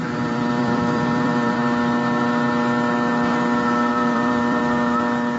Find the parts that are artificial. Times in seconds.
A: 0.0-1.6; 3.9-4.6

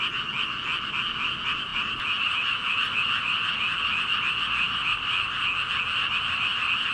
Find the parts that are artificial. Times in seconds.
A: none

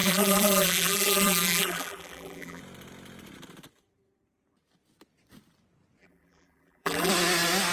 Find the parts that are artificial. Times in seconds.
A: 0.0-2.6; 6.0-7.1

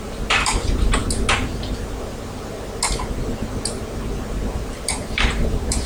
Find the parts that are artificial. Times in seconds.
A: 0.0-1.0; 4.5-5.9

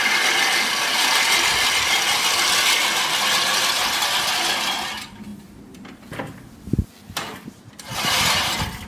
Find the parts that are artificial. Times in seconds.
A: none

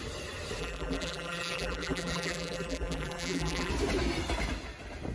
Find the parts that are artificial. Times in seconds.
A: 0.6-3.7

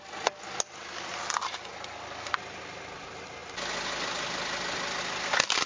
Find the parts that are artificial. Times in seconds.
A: none